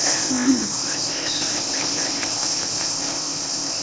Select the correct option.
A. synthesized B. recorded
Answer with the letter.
A